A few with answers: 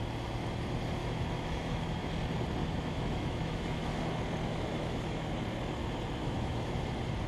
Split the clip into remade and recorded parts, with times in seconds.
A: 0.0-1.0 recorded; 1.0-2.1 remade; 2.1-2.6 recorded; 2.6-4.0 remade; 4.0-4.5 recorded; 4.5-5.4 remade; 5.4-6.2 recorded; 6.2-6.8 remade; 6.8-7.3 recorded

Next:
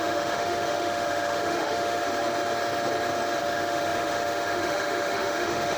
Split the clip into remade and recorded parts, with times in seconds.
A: 0.0-2.0 remade; 2.0-3.4 recorded; 3.4-5.8 remade

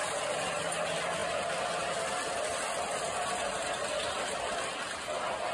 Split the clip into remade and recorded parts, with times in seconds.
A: 0.0-5.5 recorded

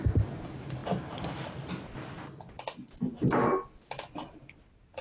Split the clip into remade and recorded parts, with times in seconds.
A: 0.0-5.0 recorded

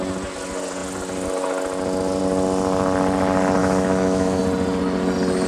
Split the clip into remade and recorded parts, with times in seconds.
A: 0.0-3.6 recorded; 3.6-4.4 remade; 4.4-5.5 recorded

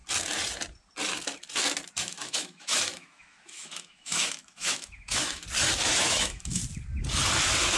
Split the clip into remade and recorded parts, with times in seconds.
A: 0.0-2.0 recorded; 2.0-5.4 remade; 5.4-6.0 recorded; 6.0-6.6 remade; 6.6-7.8 recorded

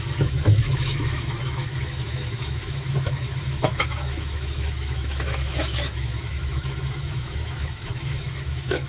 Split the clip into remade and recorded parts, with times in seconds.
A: 0.0-8.9 remade